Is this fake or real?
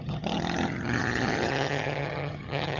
fake